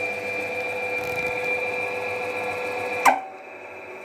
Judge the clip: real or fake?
real